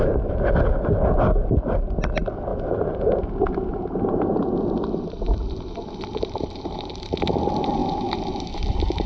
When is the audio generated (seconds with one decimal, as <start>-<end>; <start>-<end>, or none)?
0.0-2.5; 4.2-7.8; 8.5-9.1